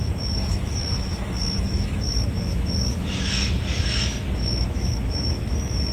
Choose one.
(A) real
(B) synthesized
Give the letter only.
B